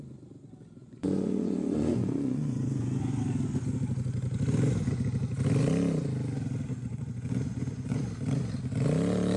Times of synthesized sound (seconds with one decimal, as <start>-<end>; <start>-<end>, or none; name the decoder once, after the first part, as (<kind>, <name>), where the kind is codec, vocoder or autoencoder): 0.8-3.2 (vocoder, Vocos); 6.7-8.0